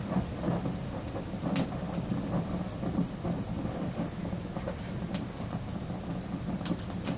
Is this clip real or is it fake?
real